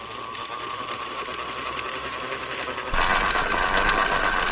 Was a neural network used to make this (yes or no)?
no